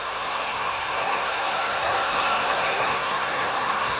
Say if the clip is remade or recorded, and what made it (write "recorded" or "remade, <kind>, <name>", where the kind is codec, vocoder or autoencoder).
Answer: remade, codec, SNAC